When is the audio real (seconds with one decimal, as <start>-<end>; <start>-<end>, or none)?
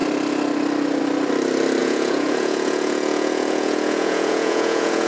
0.0-1.8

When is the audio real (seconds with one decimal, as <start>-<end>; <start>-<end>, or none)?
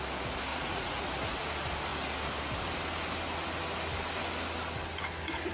0.0-0.5; 1.1-5.5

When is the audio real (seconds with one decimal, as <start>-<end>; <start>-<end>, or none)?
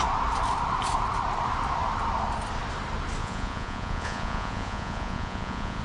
0.0-3.2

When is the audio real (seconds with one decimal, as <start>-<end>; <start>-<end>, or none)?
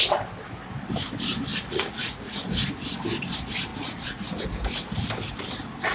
0.0-1.5; 2.4-3.7; 4.4-5.9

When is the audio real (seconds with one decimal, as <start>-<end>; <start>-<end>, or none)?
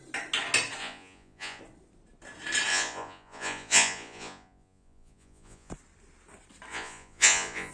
0.0-0.8; 1.6-2.7; 5.7-6.7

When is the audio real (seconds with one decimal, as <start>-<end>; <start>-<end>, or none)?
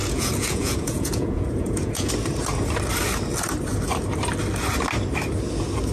2.1-5.9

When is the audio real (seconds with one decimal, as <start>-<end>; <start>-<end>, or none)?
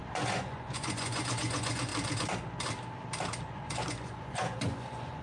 1.9-3.4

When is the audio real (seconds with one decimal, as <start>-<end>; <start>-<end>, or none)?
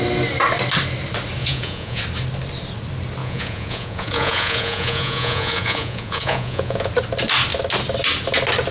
0.0-1.4; 2.0-3.2; 6.9-8.7